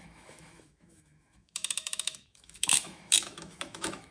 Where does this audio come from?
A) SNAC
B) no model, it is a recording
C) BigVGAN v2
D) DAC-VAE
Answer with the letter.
D